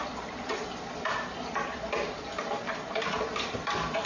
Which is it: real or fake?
fake